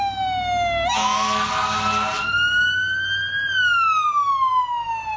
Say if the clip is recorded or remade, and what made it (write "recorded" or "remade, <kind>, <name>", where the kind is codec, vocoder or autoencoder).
recorded